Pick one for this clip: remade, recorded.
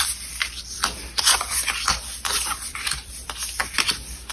remade